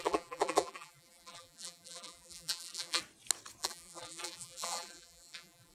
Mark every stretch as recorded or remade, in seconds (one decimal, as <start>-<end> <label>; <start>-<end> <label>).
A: 0.0-3.0 remade; 3.0-3.6 recorded; 3.6-5.7 remade